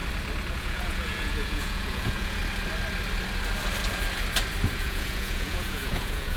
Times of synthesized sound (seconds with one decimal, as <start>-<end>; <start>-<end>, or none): 0.5-2.4; 4.8-6.4

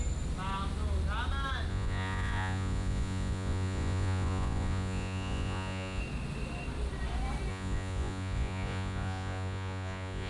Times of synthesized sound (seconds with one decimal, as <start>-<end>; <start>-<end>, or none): 1.7-6.0; 7.5-10.3

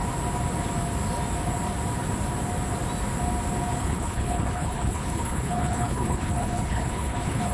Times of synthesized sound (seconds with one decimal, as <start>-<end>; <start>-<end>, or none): 3.8-7.5

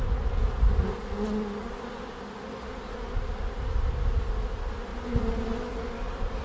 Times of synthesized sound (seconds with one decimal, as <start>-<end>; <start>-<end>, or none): none

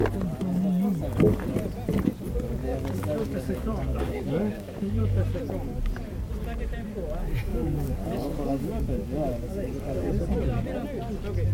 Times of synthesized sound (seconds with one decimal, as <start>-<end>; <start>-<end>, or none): 2.6-5.2; 7.5-10.1

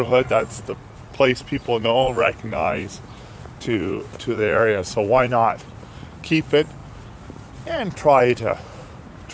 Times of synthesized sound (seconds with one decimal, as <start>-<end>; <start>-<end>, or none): 0.0-9.3

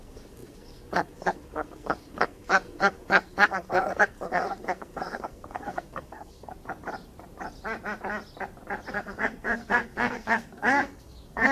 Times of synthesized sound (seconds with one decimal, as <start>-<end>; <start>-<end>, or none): 0.0-6.5; 8.9-11.5

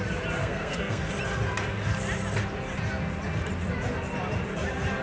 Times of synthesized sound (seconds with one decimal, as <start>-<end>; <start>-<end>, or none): 0.4-1.1